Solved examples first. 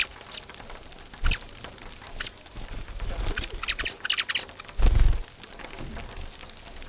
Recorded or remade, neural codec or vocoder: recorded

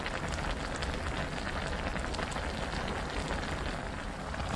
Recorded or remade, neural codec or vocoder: recorded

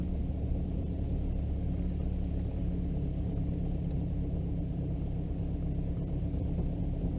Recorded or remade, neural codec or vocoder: recorded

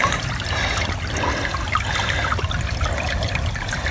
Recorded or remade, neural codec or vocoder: recorded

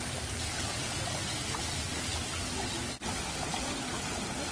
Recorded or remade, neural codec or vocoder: recorded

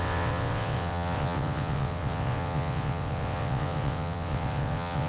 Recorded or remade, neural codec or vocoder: remade, vocoder, WaveNeXt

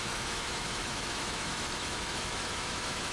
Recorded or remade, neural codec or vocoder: remade, autoencoder, DAC-VAE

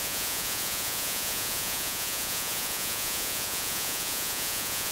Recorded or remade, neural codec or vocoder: remade, vocoder, Vocos